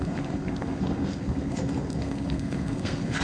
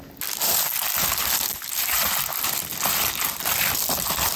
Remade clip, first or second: first